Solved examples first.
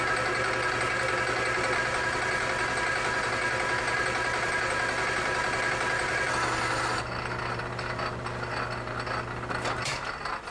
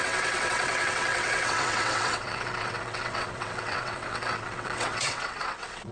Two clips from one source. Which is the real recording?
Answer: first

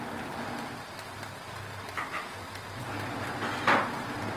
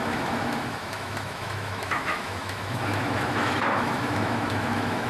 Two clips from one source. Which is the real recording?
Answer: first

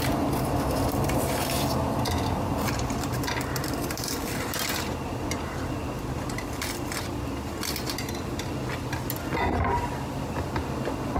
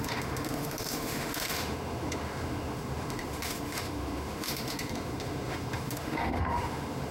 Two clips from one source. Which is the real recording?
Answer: first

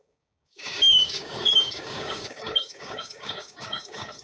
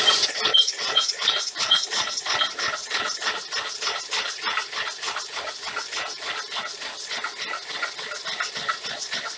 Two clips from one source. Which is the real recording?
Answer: second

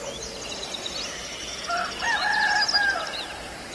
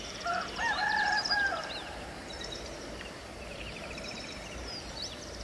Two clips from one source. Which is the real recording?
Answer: first